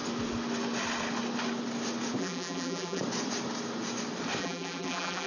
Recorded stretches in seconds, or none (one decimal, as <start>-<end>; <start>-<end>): 0.0-2.2; 3.0-4.4